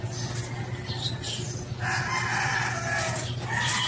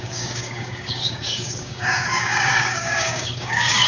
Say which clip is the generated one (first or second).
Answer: second